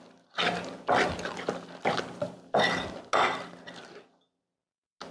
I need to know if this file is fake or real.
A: real